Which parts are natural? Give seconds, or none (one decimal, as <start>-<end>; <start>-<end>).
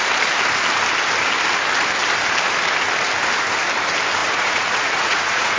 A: 0.0-4.2